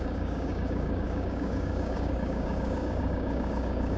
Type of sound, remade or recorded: remade